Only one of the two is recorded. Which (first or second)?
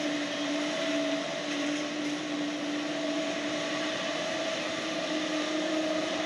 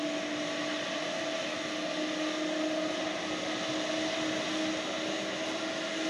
second